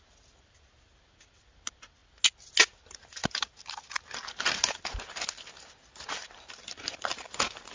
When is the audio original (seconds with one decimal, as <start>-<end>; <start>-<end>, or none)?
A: 0.0-7.7